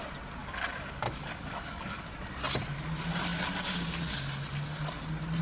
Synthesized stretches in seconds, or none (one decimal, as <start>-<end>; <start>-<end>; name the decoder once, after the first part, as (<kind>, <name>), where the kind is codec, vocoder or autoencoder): 0.4-2.1 (codec, DAC)